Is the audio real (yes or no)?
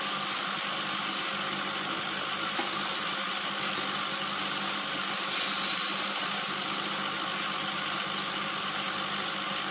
yes